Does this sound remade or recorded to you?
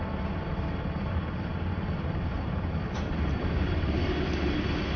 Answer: recorded